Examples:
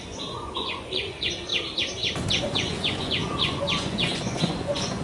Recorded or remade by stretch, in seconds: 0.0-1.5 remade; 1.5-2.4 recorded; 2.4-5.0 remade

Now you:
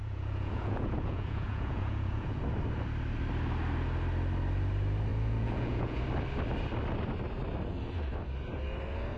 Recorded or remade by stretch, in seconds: 0.0-2.4 remade; 2.4-5.1 recorded; 5.1-6.0 remade; 6.0-9.2 recorded

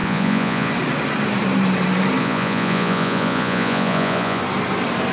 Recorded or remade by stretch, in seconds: 0.0-0.7 remade; 0.7-2.2 recorded; 2.2-4.4 remade; 4.4-5.1 recorded

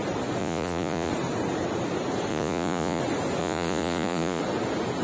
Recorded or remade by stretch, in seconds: 0.0-0.4 recorded; 0.4-1.1 remade; 1.1-2.3 recorded; 2.3-3.0 remade; 3.0-3.4 recorded; 3.4-4.4 remade; 4.4-5.0 recorded

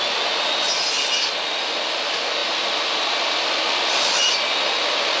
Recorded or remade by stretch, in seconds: 0.0-5.2 recorded

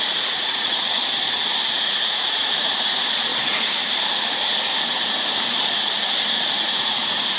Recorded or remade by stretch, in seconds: 0.0-1.0 remade; 1.0-1.7 recorded; 1.7-3.3 remade; 3.3-6.7 recorded; 6.7-7.4 remade

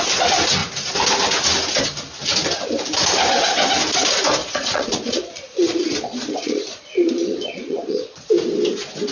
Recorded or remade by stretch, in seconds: 0.0-4.4 recorded; 4.4-8.3 remade; 8.3-9.1 recorded

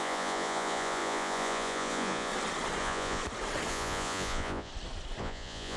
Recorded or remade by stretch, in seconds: 0.0-2.3 remade; 2.3-2.8 recorded; 2.8-3.2 remade; 3.2-3.7 recorded; 3.7-4.7 remade; 4.7-5.2 recorded; 5.2-5.8 remade